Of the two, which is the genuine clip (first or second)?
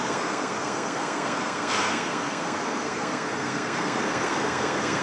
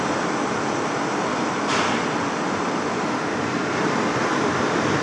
second